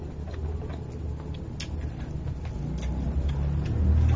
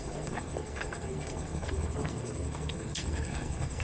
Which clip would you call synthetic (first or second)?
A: second